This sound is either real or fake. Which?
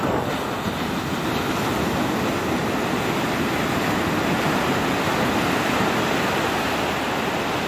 real